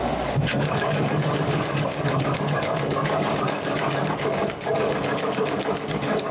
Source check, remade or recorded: remade